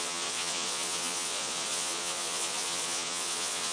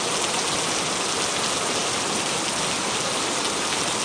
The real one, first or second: second